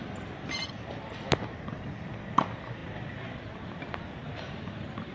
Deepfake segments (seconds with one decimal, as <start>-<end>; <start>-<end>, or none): none